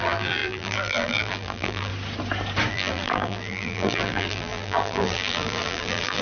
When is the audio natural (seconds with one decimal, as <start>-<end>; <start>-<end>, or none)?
1.9-2.7